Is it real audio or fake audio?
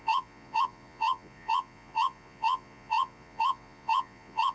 fake